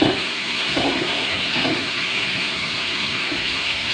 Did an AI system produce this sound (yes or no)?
yes